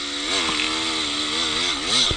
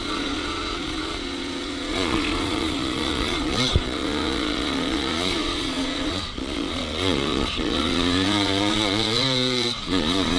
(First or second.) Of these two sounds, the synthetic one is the second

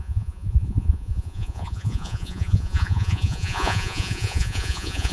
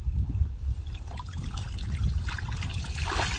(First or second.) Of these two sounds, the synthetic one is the first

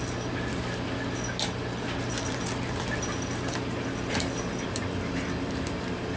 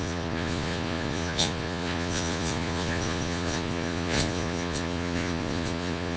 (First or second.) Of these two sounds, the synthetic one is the second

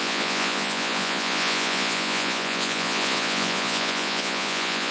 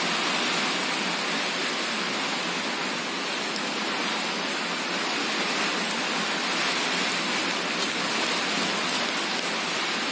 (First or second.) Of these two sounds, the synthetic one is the first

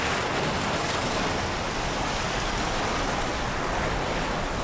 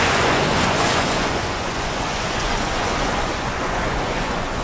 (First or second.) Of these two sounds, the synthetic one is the second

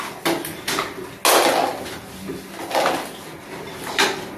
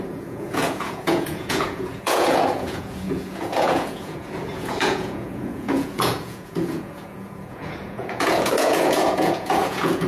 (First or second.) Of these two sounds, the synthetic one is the second